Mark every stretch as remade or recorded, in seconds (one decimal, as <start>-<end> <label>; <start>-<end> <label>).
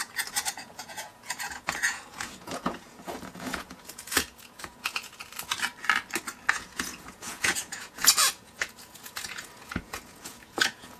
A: 0.0-5.2 remade; 5.2-6.5 recorded; 6.5-11.0 remade